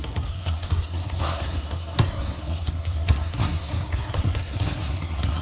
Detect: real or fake fake